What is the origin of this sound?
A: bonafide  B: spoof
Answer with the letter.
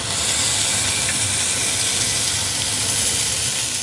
A